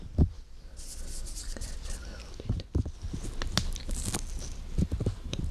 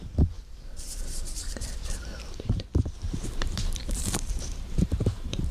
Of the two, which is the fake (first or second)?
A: second